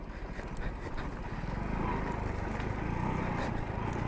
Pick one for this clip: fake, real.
real